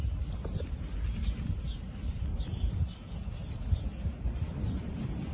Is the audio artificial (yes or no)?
no